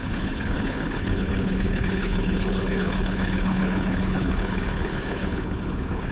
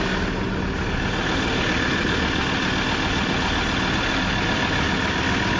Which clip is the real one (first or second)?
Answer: second